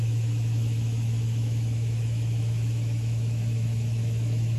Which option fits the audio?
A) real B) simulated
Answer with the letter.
B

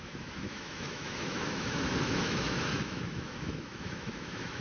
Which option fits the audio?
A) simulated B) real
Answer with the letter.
A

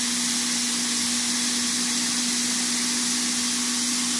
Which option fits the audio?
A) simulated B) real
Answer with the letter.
B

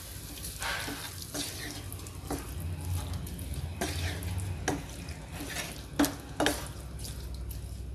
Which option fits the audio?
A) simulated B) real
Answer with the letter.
B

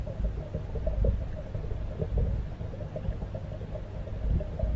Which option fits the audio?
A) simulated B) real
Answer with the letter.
B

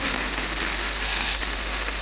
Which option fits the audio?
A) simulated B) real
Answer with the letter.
A